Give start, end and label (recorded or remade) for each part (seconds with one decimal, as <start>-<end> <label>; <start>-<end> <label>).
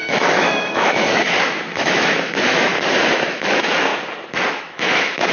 0.0-2.7 remade; 2.7-3.3 recorded; 3.3-3.9 remade; 3.9-4.5 recorded; 4.5-5.3 remade